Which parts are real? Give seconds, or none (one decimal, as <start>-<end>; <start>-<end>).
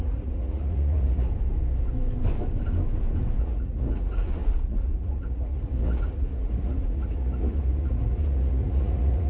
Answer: 1.3-3.4